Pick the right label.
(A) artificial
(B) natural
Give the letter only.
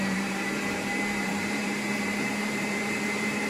A